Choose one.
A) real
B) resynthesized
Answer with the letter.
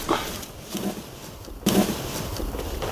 A